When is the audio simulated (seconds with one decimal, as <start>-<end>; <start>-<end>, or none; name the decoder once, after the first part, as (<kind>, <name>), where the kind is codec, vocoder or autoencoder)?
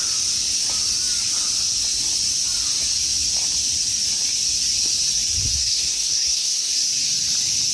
5.6-6.7 (codec, SNAC)